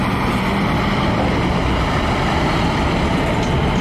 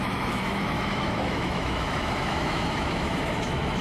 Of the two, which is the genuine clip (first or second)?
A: first